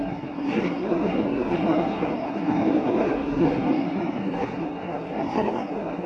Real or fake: fake